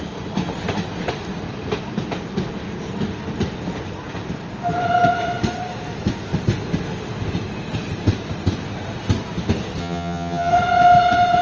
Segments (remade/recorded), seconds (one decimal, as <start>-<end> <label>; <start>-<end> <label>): 0.0-9.8 recorded; 9.8-10.5 remade; 10.5-11.4 recorded